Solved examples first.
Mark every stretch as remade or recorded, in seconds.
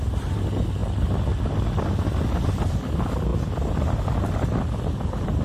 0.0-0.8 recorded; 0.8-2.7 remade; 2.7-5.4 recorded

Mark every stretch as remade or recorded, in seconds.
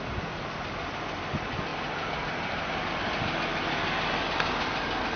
0.0-5.2 recorded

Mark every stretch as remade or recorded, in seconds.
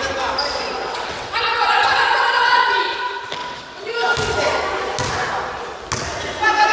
0.0-0.8 recorded; 0.8-2.7 remade; 2.7-3.4 recorded; 3.4-3.9 remade; 3.9-6.7 recorded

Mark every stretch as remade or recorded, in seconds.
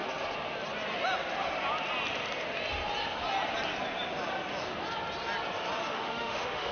0.0-5.8 recorded; 5.8-6.7 remade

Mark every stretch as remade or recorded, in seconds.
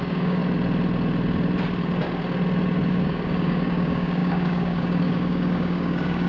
0.0-0.4 remade; 0.4-2.9 recorded; 2.9-6.3 remade